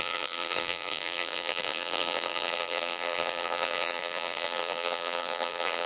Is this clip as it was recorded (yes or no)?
no